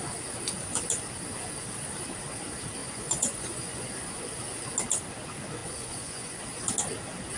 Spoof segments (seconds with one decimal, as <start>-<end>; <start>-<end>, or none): 2.8-4.2; 5.6-6.4